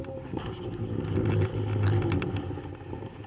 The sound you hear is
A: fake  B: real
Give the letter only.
B